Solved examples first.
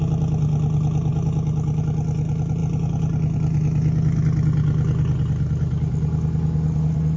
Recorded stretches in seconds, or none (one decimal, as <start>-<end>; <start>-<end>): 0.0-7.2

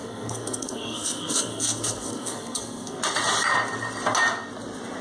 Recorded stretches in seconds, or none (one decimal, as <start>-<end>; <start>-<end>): 3.0-5.0

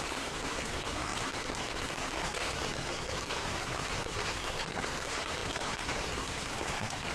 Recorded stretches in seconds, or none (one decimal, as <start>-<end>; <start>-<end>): none

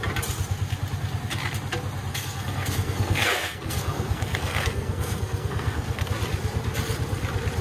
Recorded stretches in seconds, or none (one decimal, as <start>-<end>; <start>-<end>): 0.0-2.1; 6.1-7.6

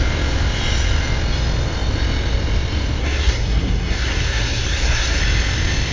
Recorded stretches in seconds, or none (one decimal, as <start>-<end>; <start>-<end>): 0.0-3.0; 5.2-5.9